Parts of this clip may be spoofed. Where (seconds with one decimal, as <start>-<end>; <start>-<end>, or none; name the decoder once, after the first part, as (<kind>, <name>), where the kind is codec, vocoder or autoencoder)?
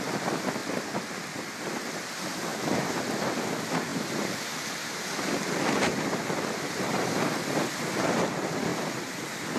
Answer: none